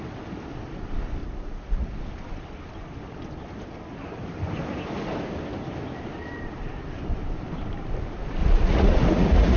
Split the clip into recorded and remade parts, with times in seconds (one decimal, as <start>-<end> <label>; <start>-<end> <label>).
0.0-1.2 recorded; 1.2-1.9 remade; 1.9-8.4 recorded; 8.4-9.6 remade